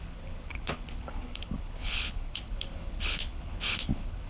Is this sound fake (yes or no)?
yes